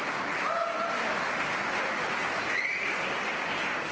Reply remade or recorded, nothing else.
recorded